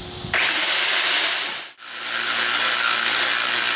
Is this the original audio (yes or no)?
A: yes